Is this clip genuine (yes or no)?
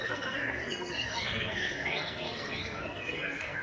no